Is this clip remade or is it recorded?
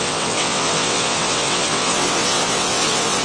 remade